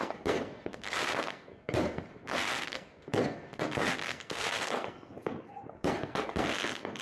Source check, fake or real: fake